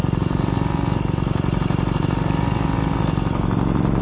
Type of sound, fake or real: real